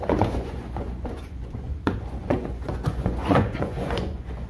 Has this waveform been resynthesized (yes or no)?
yes